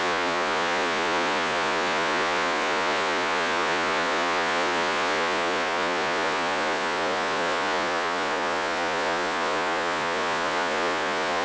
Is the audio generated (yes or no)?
yes